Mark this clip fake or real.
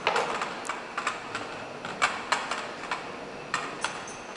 real